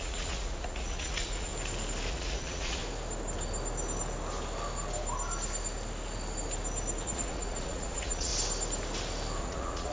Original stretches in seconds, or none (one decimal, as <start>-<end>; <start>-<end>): 1.5-2.1; 2.8-7.0; 8.3-9.4